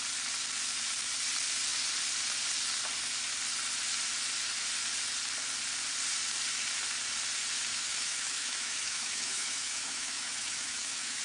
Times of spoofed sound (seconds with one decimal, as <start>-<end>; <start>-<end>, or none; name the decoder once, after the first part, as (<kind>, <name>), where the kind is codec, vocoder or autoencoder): 7.7-11.2 (autoencoder, DAC-VAE)